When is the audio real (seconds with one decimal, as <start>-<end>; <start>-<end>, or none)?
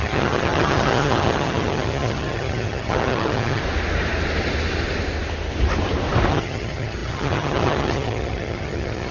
3.6-6.3